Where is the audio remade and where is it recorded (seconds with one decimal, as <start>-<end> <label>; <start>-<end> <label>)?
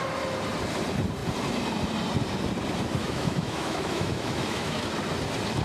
0.0-3.0 recorded; 3.0-4.8 remade; 4.8-5.6 recorded